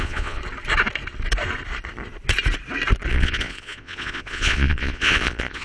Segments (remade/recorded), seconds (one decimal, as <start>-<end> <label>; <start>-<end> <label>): 0.0-0.4 remade; 0.4-3.1 recorded; 3.1-5.6 remade